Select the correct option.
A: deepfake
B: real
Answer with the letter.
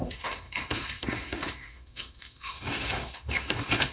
A